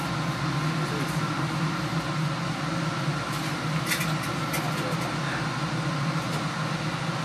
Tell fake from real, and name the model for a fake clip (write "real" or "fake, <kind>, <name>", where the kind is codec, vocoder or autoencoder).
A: real